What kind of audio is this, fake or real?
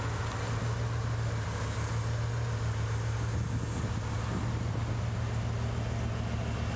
real